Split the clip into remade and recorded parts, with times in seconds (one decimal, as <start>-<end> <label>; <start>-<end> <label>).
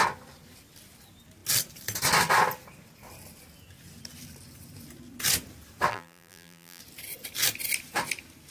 0.0-5.9 recorded; 5.9-6.8 remade; 6.8-8.5 recorded